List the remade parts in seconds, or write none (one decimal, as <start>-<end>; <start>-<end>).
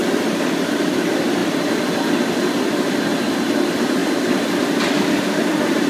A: 0.0-0.9; 1.4-2.1; 4.0-4.8